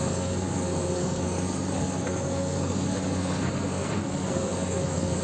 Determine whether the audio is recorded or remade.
remade